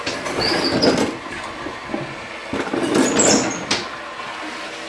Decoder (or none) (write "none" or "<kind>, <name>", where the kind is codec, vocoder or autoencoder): none